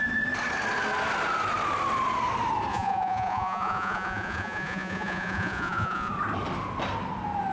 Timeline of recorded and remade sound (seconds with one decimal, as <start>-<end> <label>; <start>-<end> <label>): 0.0-2.7 recorded; 2.7-6.1 remade; 6.1-7.5 recorded